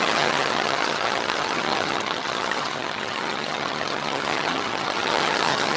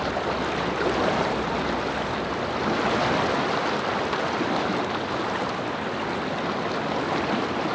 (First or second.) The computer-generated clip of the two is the first